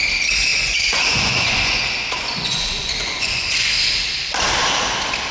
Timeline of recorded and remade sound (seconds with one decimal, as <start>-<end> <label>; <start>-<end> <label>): 0.0-0.5 recorded; 0.5-3.7 remade; 3.7-5.3 recorded